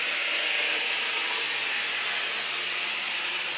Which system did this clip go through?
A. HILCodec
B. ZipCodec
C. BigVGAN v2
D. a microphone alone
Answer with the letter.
D